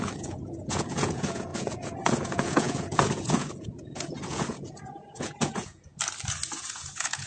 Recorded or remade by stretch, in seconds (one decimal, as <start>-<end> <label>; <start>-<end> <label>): 0.0-5.9 remade; 5.9-6.6 recorded; 6.6-7.3 remade